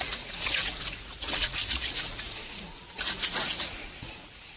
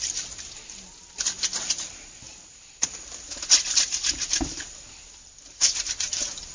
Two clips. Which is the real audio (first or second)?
second